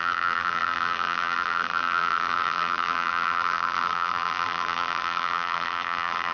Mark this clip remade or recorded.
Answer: remade